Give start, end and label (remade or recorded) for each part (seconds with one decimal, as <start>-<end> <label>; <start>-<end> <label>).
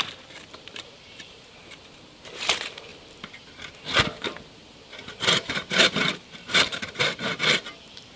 0.0-2.9 remade; 2.9-4.2 recorded; 4.2-8.2 remade